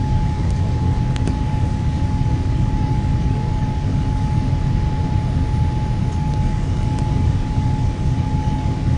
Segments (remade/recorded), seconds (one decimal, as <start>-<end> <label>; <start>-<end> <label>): 0.0-4.5 remade; 4.5-6.0 recorded; 6.0-9.0 remade